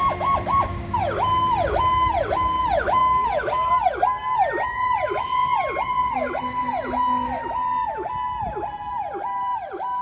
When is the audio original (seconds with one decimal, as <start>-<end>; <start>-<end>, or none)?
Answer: 0.0-10.0